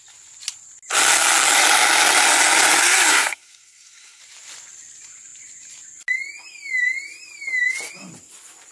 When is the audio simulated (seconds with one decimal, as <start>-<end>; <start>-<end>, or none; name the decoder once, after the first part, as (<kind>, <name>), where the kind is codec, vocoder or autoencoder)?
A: 3.1-4.2 (codec, SNAC)